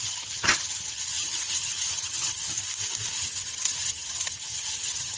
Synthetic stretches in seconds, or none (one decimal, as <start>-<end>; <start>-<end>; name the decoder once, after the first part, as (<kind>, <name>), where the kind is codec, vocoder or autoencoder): 0.0-2.5 (vocoder, HiFi-GAN); 3.1-5.2